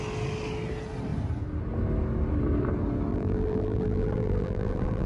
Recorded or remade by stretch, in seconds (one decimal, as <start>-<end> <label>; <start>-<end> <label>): 0.0-3.1 recorded; 3.1-5.1 remade